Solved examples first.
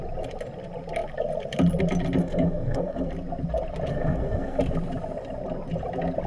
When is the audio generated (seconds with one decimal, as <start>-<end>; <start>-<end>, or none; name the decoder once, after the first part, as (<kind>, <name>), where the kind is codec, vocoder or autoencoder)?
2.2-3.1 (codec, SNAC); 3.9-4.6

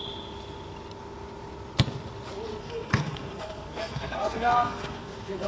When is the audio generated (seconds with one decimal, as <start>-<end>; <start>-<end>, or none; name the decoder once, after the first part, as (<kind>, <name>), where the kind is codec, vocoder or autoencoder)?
2.6-5.5 (codec, SNAC)

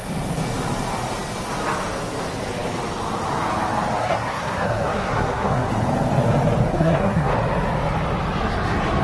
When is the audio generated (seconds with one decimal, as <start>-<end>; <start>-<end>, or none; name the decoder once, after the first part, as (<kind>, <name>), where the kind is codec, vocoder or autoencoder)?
4.0-5.7 (codec, SNAC); 6.7-7.3

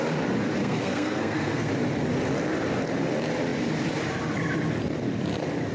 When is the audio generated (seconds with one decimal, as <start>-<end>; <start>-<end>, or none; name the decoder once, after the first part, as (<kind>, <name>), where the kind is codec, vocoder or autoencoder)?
0.6-1.7 (codec, SNAC)

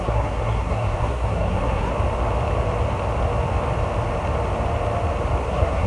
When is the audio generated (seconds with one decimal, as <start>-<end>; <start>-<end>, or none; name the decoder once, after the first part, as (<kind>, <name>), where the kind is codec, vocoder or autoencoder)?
0.0-1.9 (codec, SNAC); 5.4-5.9

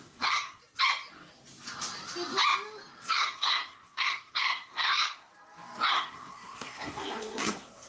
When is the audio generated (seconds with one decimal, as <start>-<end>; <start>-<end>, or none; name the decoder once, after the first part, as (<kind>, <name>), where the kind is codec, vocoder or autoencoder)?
0.0-0.6 (codec, SNAC); 3.0-5.3; 5.9-7.9